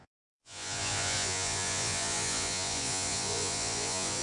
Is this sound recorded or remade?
remade